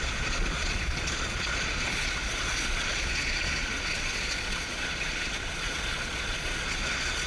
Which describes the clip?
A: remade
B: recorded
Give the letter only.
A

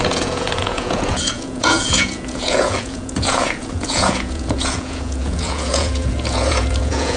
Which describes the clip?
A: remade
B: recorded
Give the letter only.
A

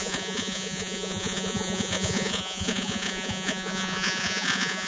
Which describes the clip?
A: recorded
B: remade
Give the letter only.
B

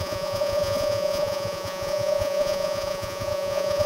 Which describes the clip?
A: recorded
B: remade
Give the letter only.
B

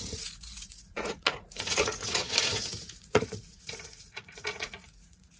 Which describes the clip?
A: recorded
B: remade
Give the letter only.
B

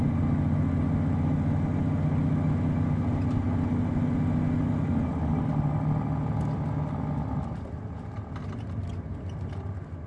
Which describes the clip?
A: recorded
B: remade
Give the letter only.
A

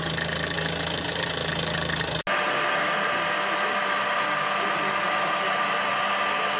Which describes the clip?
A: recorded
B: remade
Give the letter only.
A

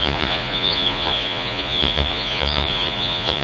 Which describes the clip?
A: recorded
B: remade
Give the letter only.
B